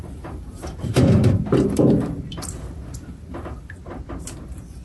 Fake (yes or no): yes